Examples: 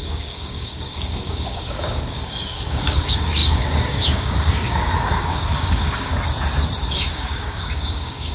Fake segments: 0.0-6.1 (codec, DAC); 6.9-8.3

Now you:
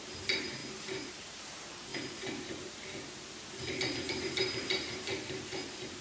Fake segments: 0.0-0.6 (vocoder, BigVGAN v2); 1.1-1.9; 4.1-6.0

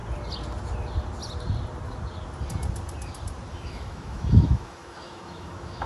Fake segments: 3.5-5.9 (autoencoder, DAC-VAE)

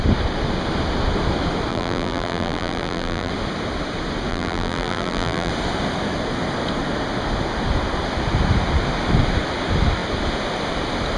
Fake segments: 1.7-3.3 (vocoder, BigVGAN v2); 4.3-5.5